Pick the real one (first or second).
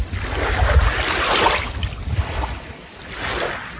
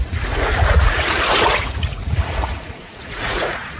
first